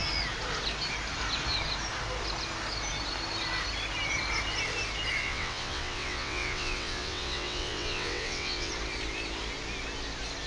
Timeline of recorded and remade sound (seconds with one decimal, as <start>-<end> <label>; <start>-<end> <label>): 0.0-5.2 recorded; 5.2-8.7 remade; 8.7-10.5 recorded